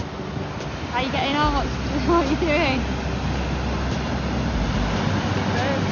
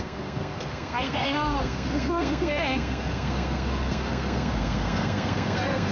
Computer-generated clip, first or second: second